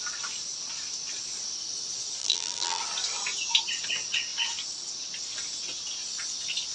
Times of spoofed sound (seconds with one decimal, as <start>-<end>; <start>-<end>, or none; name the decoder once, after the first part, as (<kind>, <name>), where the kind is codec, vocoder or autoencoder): 2.2-2.8 (vocoder, BigVGAN v2)